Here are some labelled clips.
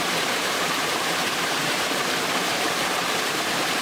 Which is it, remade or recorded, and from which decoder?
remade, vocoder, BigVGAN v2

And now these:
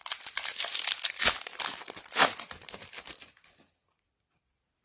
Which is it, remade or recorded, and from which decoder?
recorded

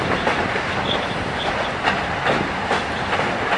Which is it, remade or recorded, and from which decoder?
remade, vocoder, BigVGAN v2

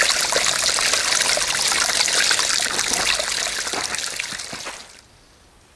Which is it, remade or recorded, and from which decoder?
recorded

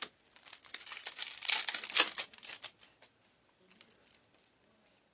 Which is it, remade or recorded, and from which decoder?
recorded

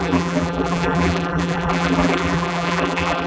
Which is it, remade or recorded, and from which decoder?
remade, vocoder, BigVGAN v2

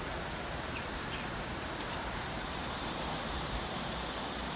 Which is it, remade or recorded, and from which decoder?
remade, vocoder, BigVGAN v2